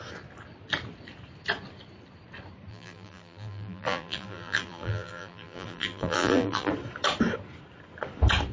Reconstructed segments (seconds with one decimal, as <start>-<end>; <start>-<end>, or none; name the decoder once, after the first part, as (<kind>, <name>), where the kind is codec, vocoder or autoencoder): 2.7-6.7 (vocoder, BigVGAN v2)